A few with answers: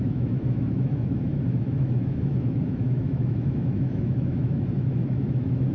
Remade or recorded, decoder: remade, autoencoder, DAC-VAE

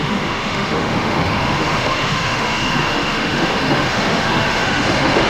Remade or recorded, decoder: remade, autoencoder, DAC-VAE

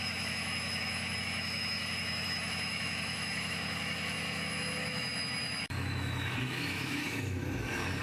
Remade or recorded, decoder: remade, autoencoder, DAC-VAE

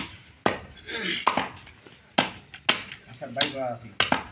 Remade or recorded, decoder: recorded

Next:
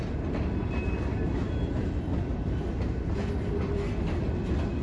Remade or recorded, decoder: recorded